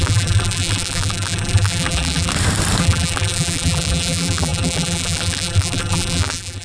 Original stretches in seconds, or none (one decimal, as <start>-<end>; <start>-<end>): 2.3-2.8